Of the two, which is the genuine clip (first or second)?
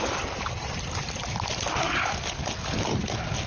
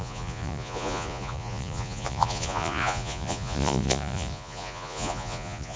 first